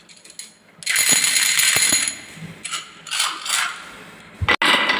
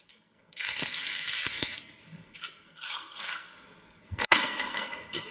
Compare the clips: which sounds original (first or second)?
first